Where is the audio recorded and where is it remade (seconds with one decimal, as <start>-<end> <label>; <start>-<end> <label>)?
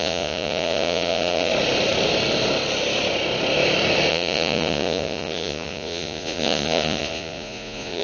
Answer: 0.0-1.5 remade; 1.5-4.1 recorded; 4.1-8.0 remade